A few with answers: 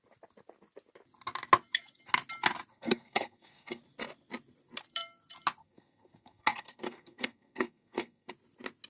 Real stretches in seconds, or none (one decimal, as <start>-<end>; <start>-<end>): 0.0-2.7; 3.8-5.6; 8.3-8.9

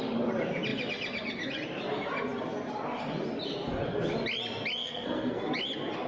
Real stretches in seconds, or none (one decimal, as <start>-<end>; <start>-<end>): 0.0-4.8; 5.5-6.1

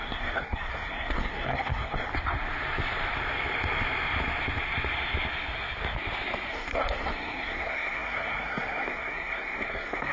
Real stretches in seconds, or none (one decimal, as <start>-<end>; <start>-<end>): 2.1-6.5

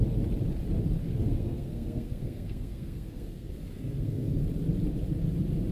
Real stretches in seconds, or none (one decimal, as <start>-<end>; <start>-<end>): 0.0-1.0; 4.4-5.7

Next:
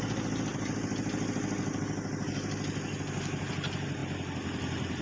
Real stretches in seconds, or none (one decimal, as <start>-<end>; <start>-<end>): 0.0-5.0